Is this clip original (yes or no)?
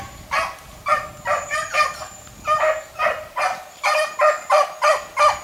yes